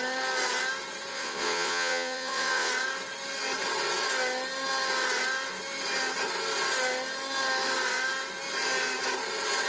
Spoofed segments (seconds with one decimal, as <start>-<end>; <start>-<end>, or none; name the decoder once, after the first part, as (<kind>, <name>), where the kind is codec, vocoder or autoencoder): 1.1-2.7 (vocoder, Vocos)

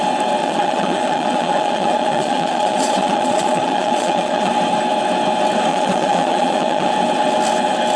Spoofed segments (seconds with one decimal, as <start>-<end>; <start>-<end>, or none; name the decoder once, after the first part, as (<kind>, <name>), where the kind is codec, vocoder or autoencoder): 0.4-4.5 (vocoder, Vocos); 5.7-6.9

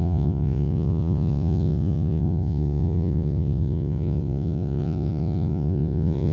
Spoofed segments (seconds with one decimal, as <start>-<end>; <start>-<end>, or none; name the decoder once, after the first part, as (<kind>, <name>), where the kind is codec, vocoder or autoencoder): 0.0-6.3 (vocoder, Vocos)

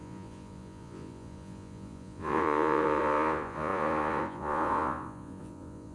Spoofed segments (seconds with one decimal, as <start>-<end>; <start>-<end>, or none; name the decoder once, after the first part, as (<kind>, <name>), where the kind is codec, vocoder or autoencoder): 0.0-5.9 (vocoder, Vocos)